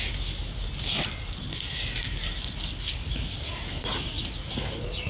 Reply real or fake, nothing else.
real